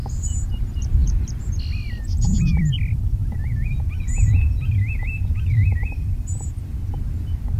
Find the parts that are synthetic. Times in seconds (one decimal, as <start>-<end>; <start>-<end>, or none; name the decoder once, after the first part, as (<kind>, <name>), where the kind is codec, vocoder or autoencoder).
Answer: 0.0-7.6 (vocoder, BigVGAN v2)